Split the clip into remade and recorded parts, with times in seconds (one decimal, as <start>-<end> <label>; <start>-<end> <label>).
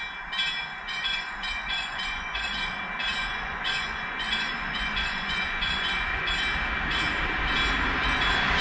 0.0-0.6 recorded; 0.6-2.8 remade; 2.8-3.2 recorded; 3.2-6.3 remade; 6.3-8.6 recorded